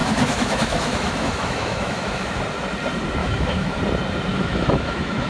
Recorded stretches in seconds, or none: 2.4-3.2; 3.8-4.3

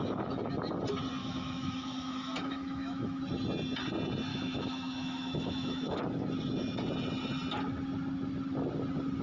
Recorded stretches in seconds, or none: 0.0-1.2; 3.2-4.3; 6.0-9.2

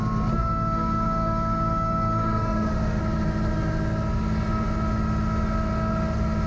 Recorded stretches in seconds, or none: 0.0-0.4; 3.0-6.5

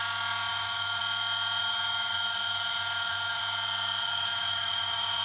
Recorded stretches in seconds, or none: 0.0-0.5; 1.0-1.6; 3.4-4.0

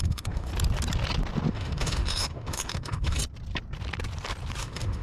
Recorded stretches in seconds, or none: 0.5-1.5; 3.2-4.6